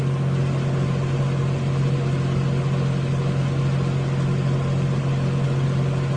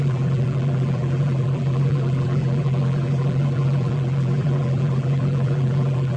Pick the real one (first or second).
first